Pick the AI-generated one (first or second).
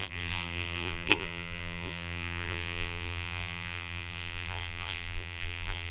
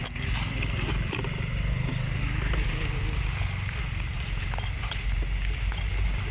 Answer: first